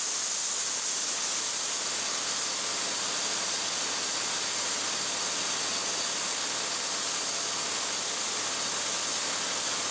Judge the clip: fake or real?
real